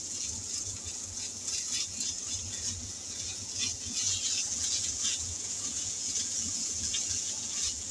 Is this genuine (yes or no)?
no